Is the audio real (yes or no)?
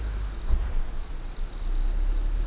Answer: yes